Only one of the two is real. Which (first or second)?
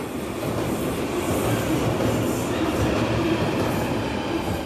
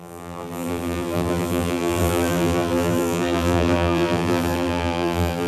first